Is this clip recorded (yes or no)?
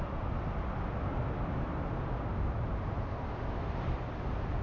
yes